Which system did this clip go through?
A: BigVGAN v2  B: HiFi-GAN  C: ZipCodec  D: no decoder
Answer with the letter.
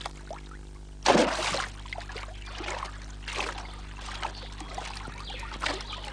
D